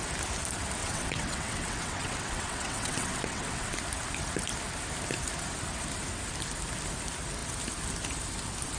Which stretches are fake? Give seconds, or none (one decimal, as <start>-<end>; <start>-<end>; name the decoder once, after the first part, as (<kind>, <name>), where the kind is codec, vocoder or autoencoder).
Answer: 0.8-3.8 (vocoder, WaveNeXt)